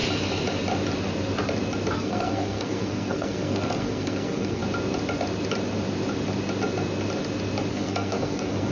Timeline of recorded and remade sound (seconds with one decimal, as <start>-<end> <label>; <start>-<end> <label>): 0.0-1.9 recorded; 1.9-4.6 remade; 4.6-7.7 recorded; 7.7-8.7 remade